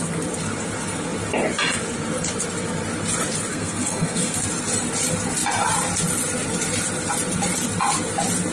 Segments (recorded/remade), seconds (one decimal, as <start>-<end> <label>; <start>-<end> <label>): 0.0-3.5 recorded; 3.5-4.4 remade; 4.4-8.5 recorded